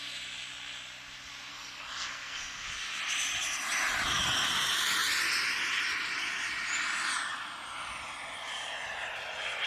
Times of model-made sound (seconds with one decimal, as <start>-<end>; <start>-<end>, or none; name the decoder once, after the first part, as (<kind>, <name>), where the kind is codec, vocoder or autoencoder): 1.5-3.0 (codec, SNAC)